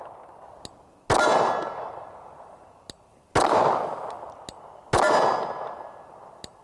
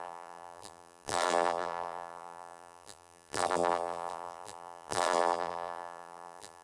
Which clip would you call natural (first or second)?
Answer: first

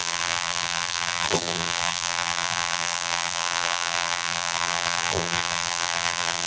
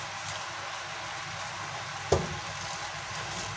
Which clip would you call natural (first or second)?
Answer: second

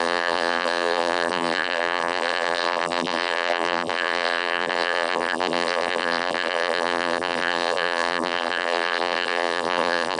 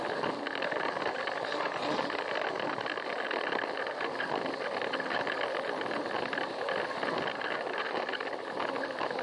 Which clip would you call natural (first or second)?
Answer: second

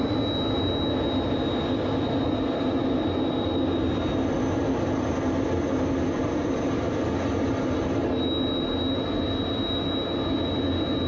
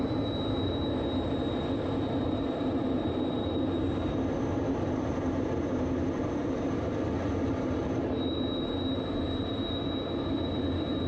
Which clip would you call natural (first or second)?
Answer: first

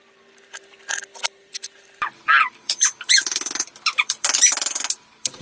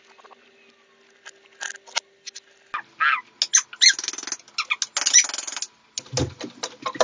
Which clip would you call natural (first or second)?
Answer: second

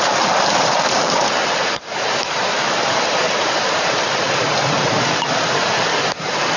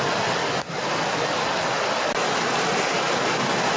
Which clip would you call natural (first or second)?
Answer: second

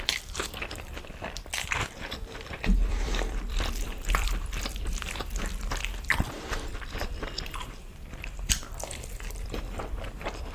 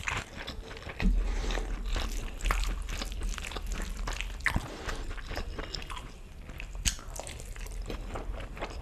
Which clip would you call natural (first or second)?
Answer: second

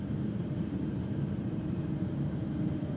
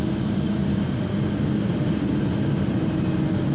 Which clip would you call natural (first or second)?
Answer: second